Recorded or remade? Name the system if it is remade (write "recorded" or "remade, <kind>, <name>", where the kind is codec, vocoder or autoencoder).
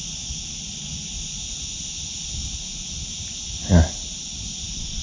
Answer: recorded